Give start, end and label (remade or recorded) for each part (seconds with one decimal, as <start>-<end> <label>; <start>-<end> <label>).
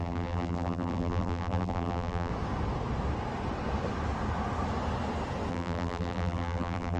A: 0.0-2.3 remade; 2.3-5.5 recorded; 5.5-7.0 remade